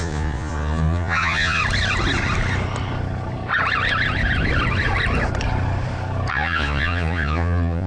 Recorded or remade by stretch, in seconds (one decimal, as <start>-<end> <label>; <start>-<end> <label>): 0.0-1.6 remade; 1.6-6.3 recorded; 6.3-7.9 remade